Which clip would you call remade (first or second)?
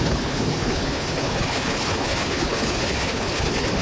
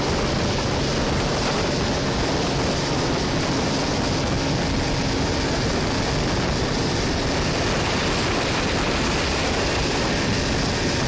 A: first